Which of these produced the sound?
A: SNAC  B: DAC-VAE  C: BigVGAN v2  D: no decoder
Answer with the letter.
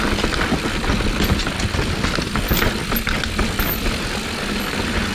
D